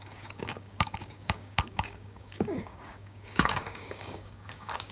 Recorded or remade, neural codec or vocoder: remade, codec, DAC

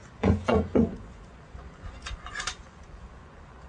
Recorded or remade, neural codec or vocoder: remade, vocoder, Vocos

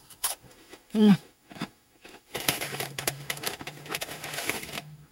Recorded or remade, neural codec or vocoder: remade, autoencoder, DAC-VAE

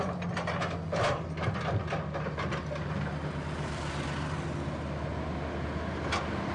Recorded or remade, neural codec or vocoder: recorded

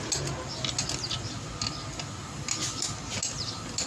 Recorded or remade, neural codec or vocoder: recorded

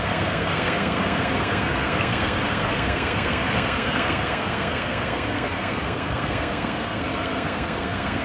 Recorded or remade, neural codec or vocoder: remade, codec, SNAC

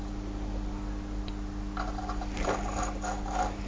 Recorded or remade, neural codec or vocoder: recorded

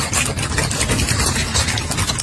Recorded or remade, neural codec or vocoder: recorded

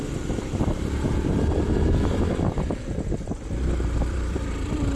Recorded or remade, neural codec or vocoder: remade, vocoder, BigVGAN v2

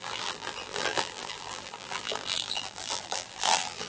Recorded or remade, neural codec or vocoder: remade, vocoder, BigVGAN v2